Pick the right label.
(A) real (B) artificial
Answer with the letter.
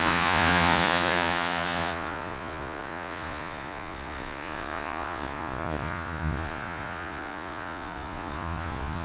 B